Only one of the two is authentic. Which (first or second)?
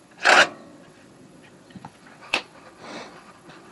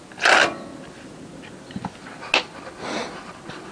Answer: second